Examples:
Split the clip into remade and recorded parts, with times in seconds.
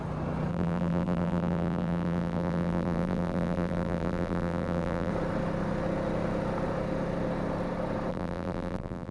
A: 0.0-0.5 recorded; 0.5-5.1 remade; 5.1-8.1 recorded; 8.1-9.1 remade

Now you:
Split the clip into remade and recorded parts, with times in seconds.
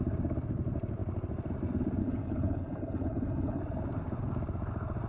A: 0.0-2.0 recorded; 2.0-3.6 remade; 3.6-5.1 recorded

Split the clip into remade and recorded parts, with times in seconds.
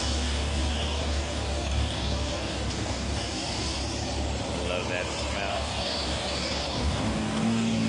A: 0.0-3.8 remade; 3.8-5.5 recorded; 5.5-7.9 remade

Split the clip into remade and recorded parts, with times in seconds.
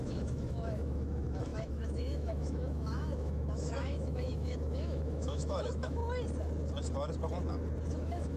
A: 0.0-6.0 remade; 6.0-7.9 recorded; 7.9-8.4 remade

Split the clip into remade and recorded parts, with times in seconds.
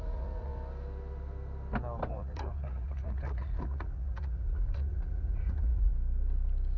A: 0.0-0.5 remade; 0.5-2.1 recorded; 2.1-5.9 remade; 5.9-6.8 recorded